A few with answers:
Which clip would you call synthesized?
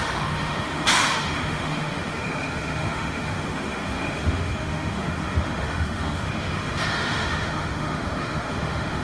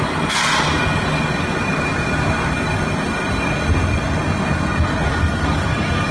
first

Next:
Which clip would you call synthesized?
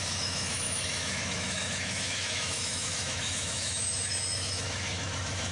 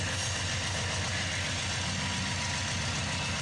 first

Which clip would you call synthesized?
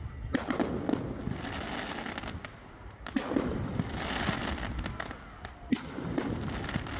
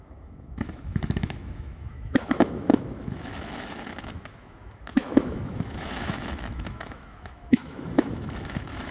second